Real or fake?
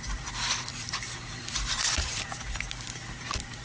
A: fake